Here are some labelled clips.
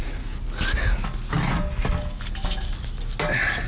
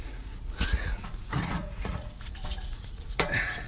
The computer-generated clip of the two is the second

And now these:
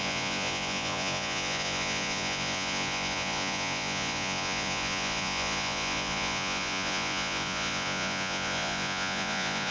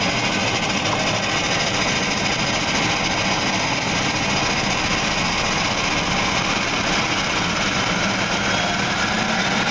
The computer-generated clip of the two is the first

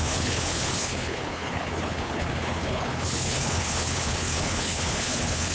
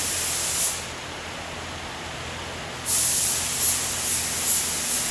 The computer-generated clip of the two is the first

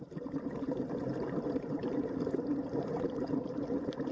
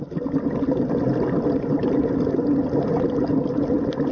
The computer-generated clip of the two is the first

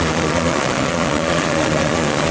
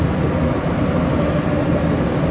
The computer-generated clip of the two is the first